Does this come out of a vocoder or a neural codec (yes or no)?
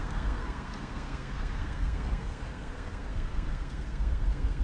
yes